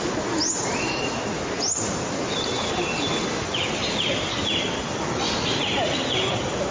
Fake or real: real